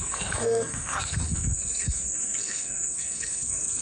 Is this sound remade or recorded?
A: remade